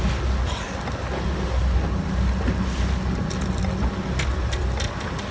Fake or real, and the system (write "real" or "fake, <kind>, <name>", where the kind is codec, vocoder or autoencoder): real